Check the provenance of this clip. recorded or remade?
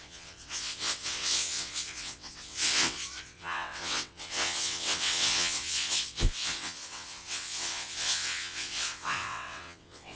remade